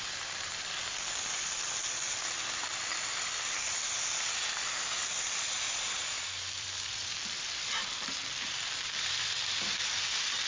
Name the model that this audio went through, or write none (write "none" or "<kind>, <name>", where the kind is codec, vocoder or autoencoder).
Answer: vocoder, BigVGAN v2